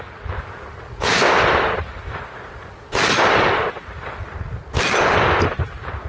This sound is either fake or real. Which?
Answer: real